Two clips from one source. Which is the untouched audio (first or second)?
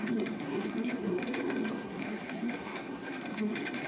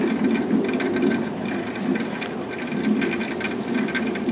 second